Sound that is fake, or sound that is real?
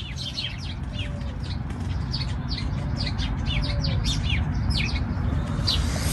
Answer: real